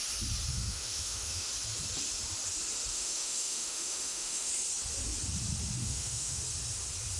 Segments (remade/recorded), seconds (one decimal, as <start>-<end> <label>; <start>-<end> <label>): 0.0-0.5 recorded; 0.5-1.5 remade; 1.5-2.9 recorded; 2.9-4.5 remade; 4.5-5.8 recorded; 5.8-6.4 remade; 6.4-7.2 recorded